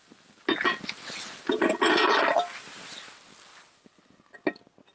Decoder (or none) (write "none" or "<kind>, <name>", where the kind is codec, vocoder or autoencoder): none